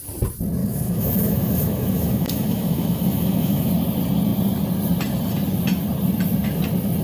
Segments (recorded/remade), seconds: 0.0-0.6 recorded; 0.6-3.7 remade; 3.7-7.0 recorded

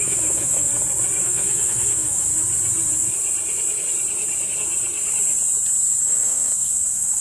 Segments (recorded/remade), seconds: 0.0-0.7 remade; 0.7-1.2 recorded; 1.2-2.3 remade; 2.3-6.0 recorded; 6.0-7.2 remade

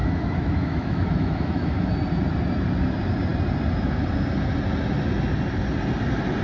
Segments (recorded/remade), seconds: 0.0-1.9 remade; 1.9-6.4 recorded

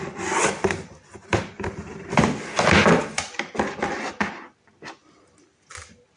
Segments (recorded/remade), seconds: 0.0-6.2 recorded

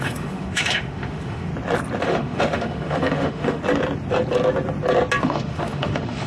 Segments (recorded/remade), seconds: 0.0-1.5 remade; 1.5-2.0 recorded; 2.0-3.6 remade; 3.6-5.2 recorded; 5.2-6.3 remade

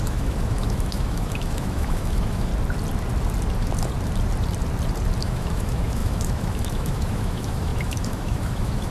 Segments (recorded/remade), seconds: 0.0-2.5 remade; 2.5-5.2 recorded; 5.2-8.9 remade